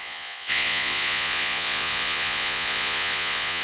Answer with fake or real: fake